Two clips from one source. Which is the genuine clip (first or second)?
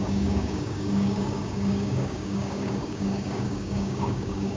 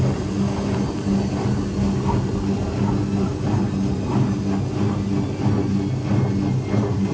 second